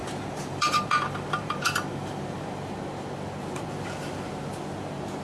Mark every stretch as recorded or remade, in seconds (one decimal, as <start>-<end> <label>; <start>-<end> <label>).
0.0-2.5 remade; 2.5-5.2 recorded